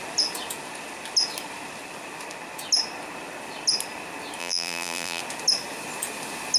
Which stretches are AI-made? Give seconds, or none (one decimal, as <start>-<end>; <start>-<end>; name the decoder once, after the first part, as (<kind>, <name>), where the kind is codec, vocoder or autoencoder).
4.4-5.2 (vocoder, BigVGAN v2)